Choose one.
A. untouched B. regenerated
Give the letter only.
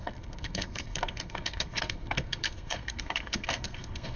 B